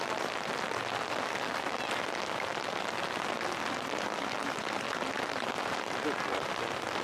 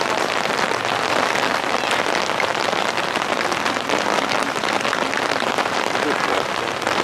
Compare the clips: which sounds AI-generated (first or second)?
second